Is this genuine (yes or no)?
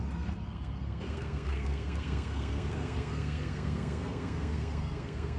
no